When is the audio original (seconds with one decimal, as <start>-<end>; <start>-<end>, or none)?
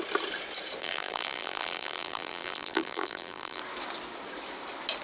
0.0-0.8; 3.6-5.0